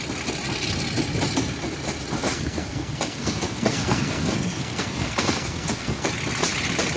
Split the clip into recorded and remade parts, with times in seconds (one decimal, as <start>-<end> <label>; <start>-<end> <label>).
0.0-2.3 recorded; 2.3-6.1 remade; 6.1-7.0 recorded

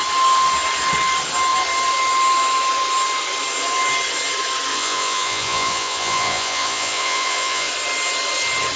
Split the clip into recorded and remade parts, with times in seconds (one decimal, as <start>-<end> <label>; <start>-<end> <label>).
0.0-4.7 recorded; 4.7-7.7 remade; 7.7-8.8 recorded

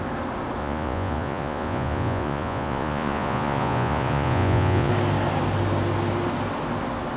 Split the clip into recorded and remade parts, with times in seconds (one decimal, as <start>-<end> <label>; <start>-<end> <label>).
0.0-0.6 recorded; 0.6-4.9 remade; 4.9-7.2 recorded

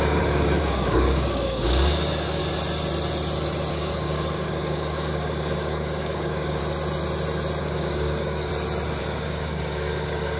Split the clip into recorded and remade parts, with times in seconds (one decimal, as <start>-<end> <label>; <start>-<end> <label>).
0.0-2.4 remade; 2.4-3.7 recorded; 3.7-6.6 remade; 6.6-7.6 recorded; 7.6-8.5 remade; 8.5-9.0 recorded; 9.0-10.4 remade

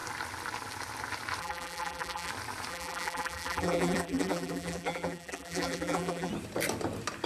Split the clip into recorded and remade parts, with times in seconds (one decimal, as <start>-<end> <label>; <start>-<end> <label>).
0.0-1.4 recorded; 1.4-2.3 remade; 2.3-2.7 recorded; 2.7-6.3 remade; 6.3-7.3 recorded

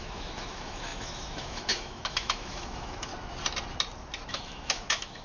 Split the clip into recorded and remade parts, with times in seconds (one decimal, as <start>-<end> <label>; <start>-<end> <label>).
0.0-3.1 remade; 3.1-4.3 recorded; 4.3-5.2 remade

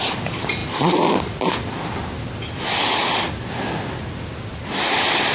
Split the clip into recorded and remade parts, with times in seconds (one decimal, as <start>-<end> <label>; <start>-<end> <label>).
0.0-5.3 recorded

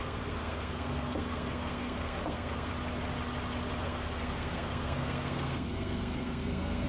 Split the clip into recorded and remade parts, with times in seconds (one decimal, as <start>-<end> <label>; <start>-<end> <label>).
0.0-2.7 remade; 2.7-3.8 recorded; 3.8-6.9 remade